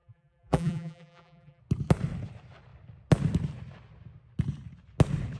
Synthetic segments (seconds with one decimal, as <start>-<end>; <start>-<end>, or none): 0.0-1.6